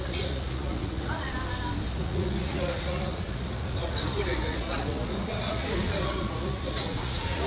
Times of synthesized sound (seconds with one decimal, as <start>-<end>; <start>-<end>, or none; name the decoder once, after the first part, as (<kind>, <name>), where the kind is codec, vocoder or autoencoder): 0.0-1.3 (vocoder, Vocos); 1.9-7.5